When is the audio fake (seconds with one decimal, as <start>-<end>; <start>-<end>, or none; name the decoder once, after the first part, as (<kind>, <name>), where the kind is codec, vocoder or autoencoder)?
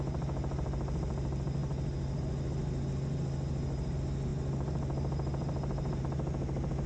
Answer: none